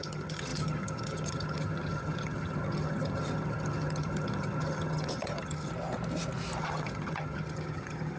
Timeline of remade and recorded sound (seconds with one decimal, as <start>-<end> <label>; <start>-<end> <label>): 0.0-5.7 remade; 5.7-6.6 recorded; 6.6-8.2 remade